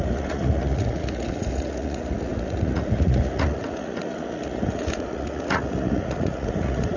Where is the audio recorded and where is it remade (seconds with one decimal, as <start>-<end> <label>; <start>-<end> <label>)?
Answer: 0.0-7.0 remade

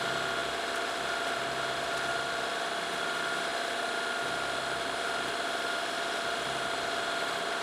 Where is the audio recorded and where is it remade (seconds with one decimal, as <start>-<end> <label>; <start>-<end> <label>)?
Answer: 0.0-7.6 recorded

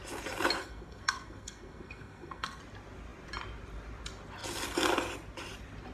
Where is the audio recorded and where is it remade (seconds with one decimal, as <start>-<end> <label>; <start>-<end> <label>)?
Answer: 0.0-0.6 recorded; 0.6-2.6 remade; 2.6-5.9 recorded

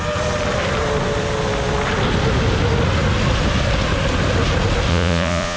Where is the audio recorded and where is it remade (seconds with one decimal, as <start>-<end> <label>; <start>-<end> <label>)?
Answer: 0.0-4.9 recorded; 4.9-5.6 remade

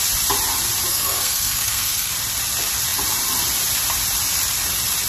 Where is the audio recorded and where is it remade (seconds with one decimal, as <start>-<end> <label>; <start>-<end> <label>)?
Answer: 0.0-0.9 recorded; 0.9-2.1 remade; 2.1-5.1 recorded

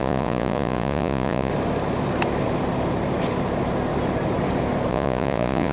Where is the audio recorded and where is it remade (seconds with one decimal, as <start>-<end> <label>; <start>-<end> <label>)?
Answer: 0.0-1.5 remade; 1.5-4.9 recorded; 4.9-5.7 remade

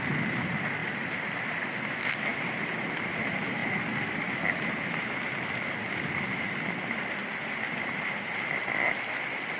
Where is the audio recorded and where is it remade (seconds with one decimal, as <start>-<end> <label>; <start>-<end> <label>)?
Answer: 0.0-9.6 recorded